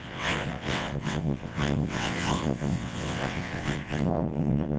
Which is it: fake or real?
fake